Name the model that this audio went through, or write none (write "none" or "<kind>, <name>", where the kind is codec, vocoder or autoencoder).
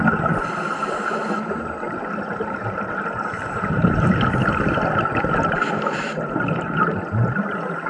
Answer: none